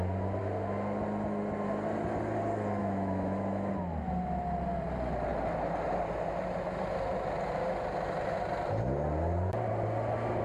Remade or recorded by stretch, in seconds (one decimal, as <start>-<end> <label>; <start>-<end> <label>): 0.0-2.8 recorded; 2.8-3.7 remade; 3.7-10.4 recorded